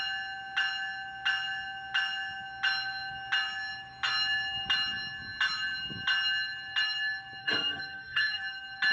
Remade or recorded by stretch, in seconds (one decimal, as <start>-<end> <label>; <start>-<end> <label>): 0.0-7.4 recorded; 7.4-8.4 remade; 8.4-8.9 recorded